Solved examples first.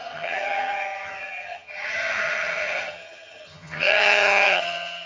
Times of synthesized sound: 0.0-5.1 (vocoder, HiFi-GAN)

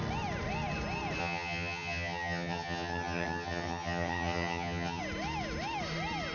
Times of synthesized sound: 1.2-5.0 (vocoder, HiFi-GAN)

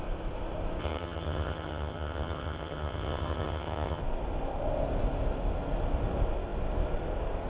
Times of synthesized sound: 0.8-4.0 (vocoder, HiFi-GAN)

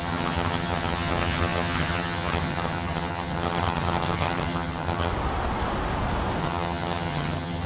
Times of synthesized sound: 0.0-5.1 (vocoder, HiFi-GAN); 6.4-7.7

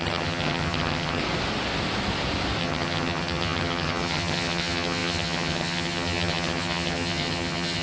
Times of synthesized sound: 0.0-1.2 (vocoder, HiFi-GAN); 2.6-7.8

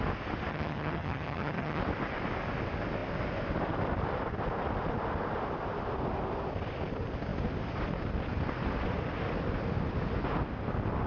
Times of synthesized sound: 0.5-1.8 (vocoder, HiFi-GAN)

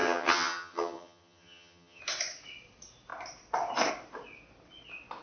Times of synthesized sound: 0.0-2.0 (vocoder, HiFi-GAN)

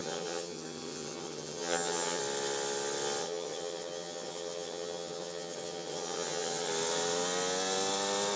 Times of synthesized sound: 0.0-2.2 (vocoder, HiFi-GAN); 3.2-6.7